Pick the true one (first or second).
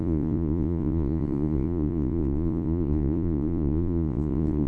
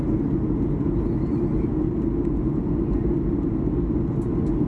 second